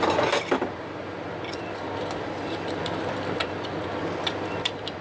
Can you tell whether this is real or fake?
fake